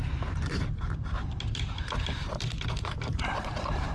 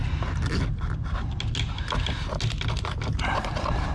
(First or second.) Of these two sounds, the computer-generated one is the first